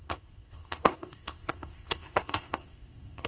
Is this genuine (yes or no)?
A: no